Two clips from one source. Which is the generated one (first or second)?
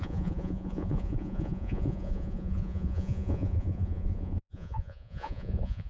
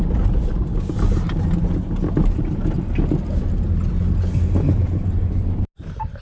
first